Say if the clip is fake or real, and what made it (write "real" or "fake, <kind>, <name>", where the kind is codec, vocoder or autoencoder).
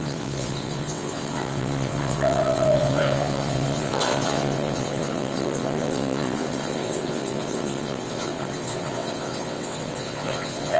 fake, vocoder, WaveNeXt